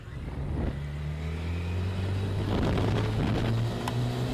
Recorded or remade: recorded